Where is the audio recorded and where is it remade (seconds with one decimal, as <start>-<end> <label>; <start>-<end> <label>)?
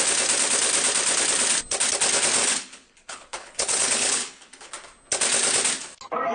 0.0-2.4 recorded; 2.4-4.7 remade; 4.7-6.3 recorded